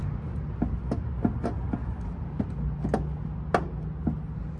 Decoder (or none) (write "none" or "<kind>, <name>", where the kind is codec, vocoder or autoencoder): none